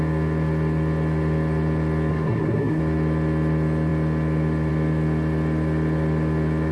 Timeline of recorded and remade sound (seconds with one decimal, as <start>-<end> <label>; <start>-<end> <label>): 0.0-2.1 recorded; 2.1-2.8 remade; 2.8-6.7 recorded